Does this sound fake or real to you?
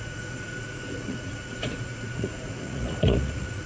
fake